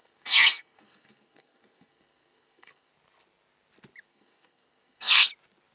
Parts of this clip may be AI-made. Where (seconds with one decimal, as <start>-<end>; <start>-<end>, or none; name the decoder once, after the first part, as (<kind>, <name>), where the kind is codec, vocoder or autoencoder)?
0.0-2.9 (codec, SNAC); 4.1-5.3